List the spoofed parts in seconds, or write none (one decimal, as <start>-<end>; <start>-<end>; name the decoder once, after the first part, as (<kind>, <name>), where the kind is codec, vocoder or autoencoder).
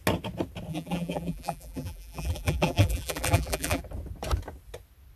0.7-3.8 (vocoder, BigVGAN v2)